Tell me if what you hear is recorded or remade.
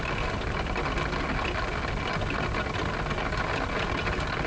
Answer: recorded